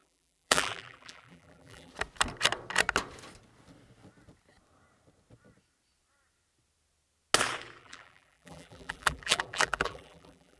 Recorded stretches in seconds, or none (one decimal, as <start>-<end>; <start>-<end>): 1.9-7.8